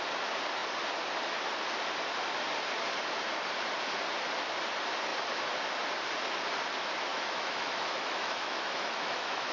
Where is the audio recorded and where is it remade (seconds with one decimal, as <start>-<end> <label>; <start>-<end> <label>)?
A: 0.0-7.1 recorded; 7.1-9.5 remade